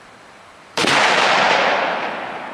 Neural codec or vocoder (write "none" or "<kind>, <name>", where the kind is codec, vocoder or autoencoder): vocoder, BigVGAN v2